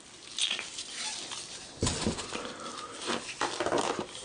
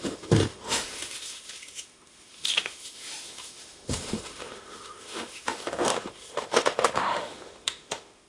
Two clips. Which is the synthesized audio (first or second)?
second